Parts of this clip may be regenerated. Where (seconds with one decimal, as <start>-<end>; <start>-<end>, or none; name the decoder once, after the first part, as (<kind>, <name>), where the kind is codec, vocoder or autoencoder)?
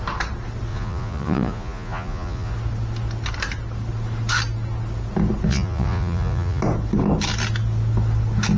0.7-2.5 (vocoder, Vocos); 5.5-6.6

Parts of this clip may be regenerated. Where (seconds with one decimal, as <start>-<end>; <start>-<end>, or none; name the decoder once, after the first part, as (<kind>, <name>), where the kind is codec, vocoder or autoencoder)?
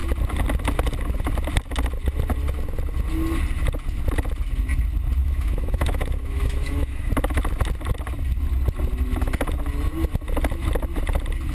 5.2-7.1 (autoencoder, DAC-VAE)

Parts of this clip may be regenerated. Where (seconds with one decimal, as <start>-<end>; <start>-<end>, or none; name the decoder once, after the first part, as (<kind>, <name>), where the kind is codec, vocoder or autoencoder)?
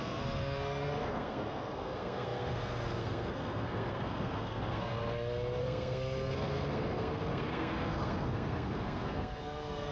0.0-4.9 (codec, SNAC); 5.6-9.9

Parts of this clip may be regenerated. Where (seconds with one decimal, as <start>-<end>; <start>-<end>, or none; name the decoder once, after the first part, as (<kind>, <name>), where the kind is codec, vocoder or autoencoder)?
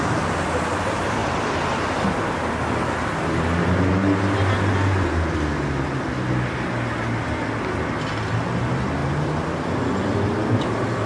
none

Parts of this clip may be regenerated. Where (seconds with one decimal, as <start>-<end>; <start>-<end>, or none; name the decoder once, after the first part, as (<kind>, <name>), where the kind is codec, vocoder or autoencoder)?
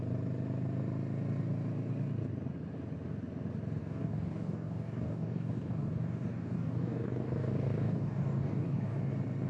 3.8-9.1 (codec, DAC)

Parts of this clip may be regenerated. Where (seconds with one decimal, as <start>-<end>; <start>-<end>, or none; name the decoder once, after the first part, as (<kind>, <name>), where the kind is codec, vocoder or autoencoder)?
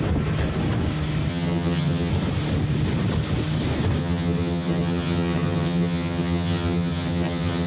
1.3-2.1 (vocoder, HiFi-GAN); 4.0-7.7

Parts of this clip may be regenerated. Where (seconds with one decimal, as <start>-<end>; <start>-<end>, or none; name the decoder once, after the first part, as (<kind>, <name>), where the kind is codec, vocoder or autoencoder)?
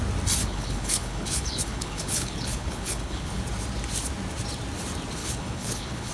0.4-3.4 (codec, HILCodec); 5.2-6.1